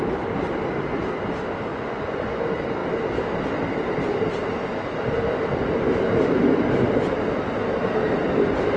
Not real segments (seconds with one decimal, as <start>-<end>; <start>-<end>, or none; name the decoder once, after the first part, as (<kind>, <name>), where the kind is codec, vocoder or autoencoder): 1.7-2.4 (vocoder, Vocos)